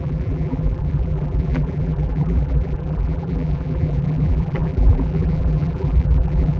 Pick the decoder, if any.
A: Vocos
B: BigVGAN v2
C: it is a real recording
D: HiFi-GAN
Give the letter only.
B